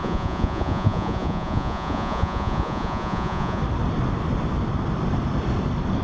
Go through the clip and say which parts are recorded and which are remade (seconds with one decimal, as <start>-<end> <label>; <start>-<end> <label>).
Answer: 0.0-3.6 remade; 3.6-6.0 recorded